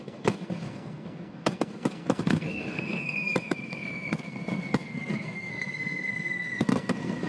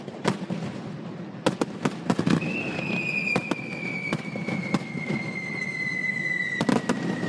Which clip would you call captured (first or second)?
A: second